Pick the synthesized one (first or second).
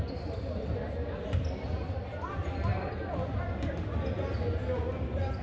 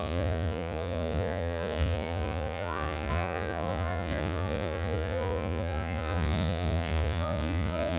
second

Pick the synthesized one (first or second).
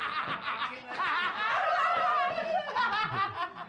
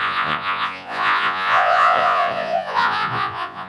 second